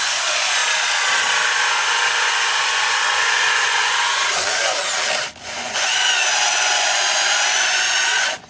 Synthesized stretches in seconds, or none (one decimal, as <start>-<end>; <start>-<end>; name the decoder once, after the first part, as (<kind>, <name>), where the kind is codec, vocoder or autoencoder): 0.0-0.6 (vocoder, Vocos); 1.7-4.8; 5.4-8.5

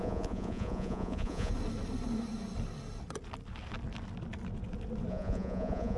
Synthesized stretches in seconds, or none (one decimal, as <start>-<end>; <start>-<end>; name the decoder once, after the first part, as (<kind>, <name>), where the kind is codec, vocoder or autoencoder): 0.0-1.5 (vocoder, Vocos); 5.1-6.0

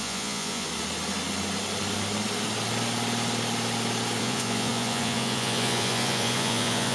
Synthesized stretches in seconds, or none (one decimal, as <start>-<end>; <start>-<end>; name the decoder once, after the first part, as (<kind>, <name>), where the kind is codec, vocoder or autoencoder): 0.0-0.7 (vocoder, Vocos); 4.2-6.9

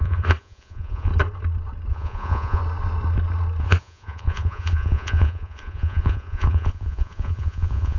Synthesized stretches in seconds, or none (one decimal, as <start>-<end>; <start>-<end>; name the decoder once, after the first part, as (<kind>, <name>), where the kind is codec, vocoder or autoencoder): 0.0-1.1 (vocoder, Vocos); 1.9-2.6; 3.6-8.0

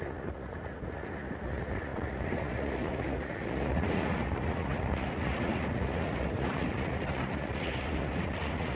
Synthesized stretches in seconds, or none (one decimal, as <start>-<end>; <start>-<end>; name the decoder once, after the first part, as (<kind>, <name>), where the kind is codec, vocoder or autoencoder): 0.0-8.8 (vocoder, Vocos)

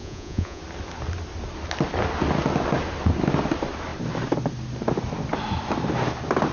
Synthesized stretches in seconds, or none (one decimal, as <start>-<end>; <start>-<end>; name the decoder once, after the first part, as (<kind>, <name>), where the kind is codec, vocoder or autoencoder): 0.0-0.6 (vocoder, Vocos)

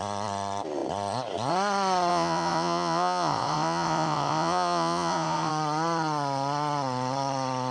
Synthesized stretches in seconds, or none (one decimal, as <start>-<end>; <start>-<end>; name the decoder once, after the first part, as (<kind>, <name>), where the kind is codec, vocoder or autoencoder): 2.1-5.5 (vocoder, Vocos)